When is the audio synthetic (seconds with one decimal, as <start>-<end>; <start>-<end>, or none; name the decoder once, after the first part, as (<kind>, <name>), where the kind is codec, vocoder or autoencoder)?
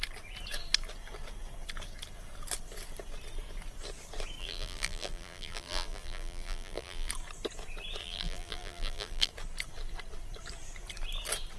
4.4-7.1 (vocoder, BigVGAN v2); 8.0-9.3